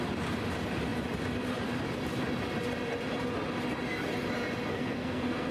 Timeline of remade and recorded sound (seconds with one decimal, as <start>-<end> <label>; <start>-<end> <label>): 0.0-4.7 recorded; 4.7-5.5 remade